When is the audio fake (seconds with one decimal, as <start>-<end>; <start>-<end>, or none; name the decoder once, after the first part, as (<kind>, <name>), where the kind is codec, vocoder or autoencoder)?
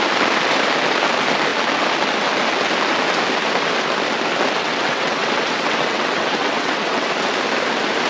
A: 4.6-7.1 (vocoder, WaveNeXt)